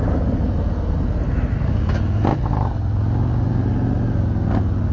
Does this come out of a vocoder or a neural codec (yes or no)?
no